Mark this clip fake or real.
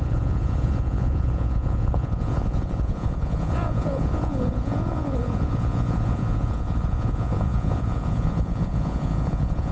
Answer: fake